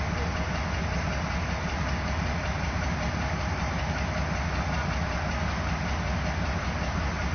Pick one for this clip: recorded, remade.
recorded